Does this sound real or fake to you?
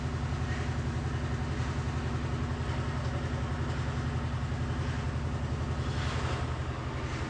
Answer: real